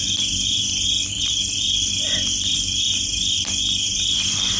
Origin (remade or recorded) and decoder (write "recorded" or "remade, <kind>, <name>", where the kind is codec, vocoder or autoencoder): remade, vocoder, BigVGAN v2